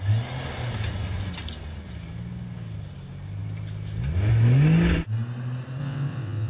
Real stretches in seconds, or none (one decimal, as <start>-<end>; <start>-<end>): 0.0-5.8